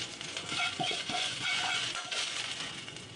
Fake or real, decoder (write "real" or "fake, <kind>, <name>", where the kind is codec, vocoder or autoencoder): fake, vocoder, Vocos